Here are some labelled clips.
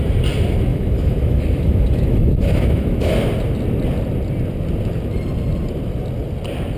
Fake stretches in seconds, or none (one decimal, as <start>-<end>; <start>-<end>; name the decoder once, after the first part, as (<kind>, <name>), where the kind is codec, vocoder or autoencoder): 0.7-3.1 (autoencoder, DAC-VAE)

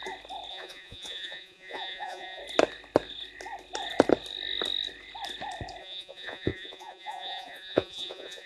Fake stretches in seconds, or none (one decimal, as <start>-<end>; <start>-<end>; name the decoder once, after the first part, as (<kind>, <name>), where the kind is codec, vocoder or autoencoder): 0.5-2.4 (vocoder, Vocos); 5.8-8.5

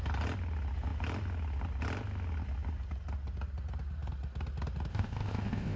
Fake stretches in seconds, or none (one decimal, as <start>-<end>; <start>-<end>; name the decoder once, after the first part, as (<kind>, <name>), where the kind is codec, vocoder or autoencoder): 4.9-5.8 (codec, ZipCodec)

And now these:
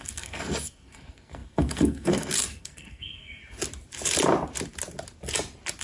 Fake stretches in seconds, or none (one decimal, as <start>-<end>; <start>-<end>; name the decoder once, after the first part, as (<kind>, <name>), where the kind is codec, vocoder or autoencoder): 0.0-3.4 (codec, SNAC)